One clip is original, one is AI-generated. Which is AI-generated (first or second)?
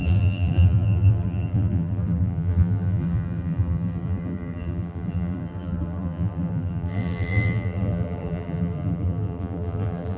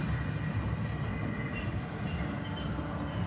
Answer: first